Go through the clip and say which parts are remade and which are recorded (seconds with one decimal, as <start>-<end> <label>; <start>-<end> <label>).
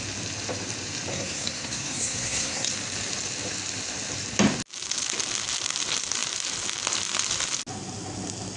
0.0-1.1 recorded; 1.1-2.7 remade; 2.7-8.6 recorded